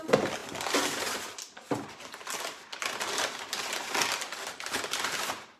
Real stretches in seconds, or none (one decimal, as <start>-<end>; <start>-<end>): 0.0-5.6